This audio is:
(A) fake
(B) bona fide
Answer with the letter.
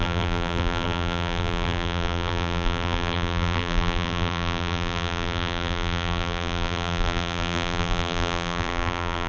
A